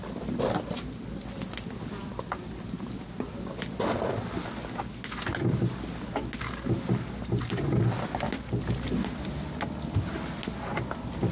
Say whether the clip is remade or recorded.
recorded